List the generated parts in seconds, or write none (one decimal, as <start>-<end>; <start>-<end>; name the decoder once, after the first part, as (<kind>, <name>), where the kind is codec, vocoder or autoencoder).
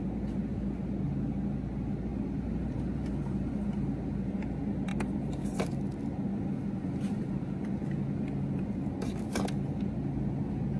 2.1-3.5 (vocoder, BigVGAN v2)